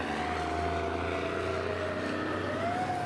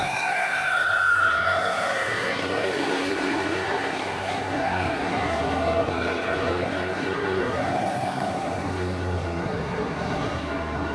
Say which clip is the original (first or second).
first